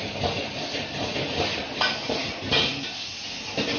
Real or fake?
real